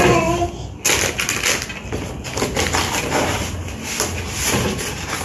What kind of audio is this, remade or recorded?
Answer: recorded